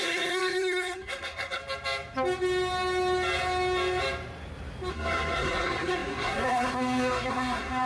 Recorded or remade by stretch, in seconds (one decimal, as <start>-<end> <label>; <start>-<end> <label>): 0.0-1.6 remade; 1.6-4.9 recorded; 4.9-7.9 remade